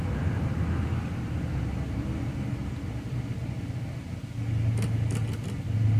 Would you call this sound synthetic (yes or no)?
no